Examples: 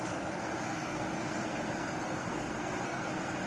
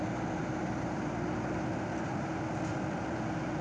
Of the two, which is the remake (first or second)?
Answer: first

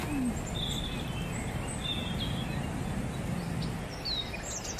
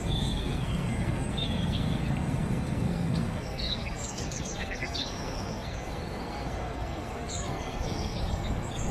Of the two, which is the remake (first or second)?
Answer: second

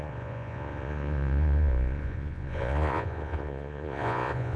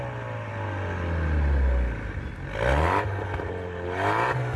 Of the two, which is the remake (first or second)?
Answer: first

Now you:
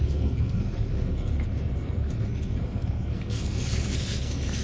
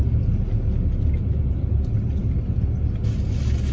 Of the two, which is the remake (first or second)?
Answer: first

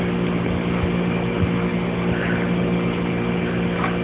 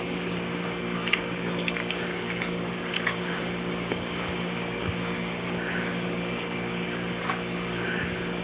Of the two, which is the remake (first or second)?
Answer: second